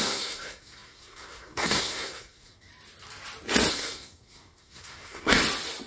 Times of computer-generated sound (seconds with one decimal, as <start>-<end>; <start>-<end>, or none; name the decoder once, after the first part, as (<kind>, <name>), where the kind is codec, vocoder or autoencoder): 0.0-2.7 (codec, SNAC); 3.7-5.4